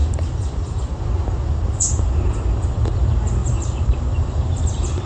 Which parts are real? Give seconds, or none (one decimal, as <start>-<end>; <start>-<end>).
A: 0.0-3.4; 4.6-5.1